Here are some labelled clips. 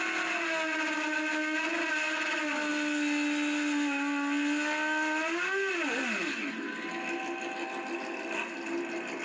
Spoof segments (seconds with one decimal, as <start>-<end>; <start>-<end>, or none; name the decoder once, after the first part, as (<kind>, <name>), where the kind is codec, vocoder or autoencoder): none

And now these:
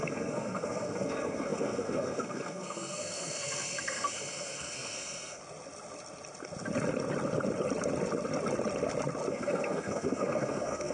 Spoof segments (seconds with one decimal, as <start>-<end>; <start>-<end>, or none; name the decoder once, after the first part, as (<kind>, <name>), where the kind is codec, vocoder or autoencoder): 0.0-5.4 (codec, SNAC); 9.3-10.9

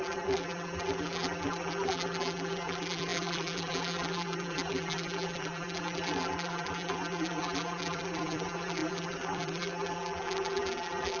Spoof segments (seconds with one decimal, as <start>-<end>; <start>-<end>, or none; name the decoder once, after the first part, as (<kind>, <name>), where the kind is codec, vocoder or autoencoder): 0.0-11.2 (vocoder, BigVGAN v2)